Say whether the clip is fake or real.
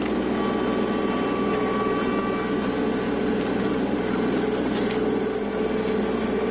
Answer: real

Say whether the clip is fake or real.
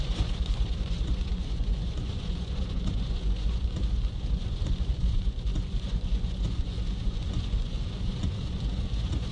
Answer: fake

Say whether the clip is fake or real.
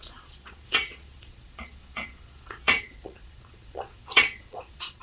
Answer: fake